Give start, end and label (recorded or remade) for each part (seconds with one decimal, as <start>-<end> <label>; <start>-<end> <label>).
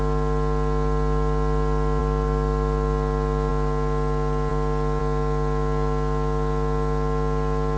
0.0-7.8 recorded